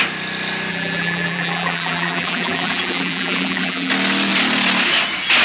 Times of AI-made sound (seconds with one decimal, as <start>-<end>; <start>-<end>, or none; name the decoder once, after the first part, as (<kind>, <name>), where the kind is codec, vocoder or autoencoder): 0.7-3.9 (vocoder, BigVGAN v2)